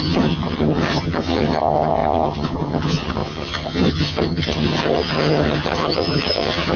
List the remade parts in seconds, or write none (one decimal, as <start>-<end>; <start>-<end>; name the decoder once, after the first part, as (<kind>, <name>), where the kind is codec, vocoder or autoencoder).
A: 0.0-6.8 (vocoder, HiFi-GAN)